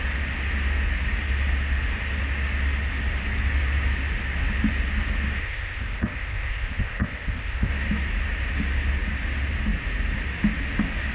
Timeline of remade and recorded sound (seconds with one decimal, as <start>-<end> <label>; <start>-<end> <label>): 0.0-5.4 recorded; 5.4-7.7 remade; 7.7-11.1 recorded